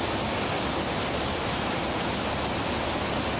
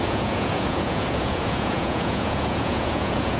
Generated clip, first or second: second